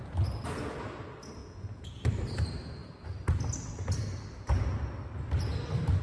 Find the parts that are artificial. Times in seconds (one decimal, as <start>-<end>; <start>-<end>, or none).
1.4-2.0